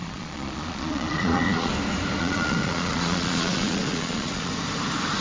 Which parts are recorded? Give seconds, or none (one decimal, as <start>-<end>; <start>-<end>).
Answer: 1.7-2.2; 4.5-5.2